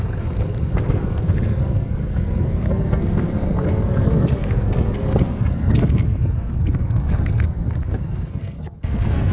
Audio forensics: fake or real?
fake